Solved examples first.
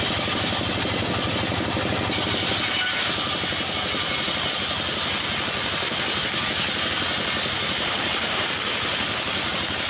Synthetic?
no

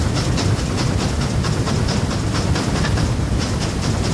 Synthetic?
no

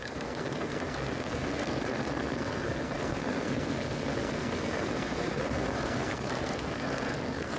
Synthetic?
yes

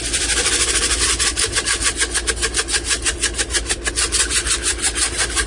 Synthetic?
no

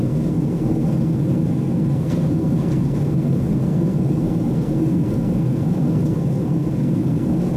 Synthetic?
yes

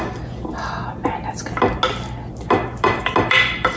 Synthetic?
no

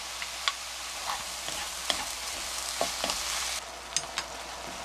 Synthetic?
no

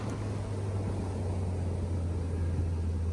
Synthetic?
no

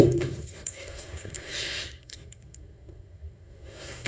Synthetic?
yes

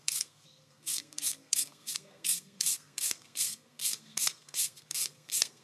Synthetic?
yes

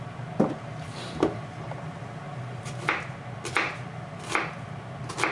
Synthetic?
no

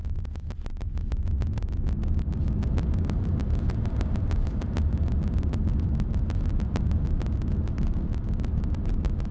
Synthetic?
no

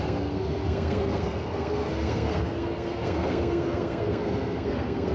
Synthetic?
yes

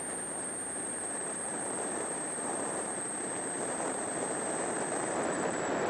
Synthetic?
no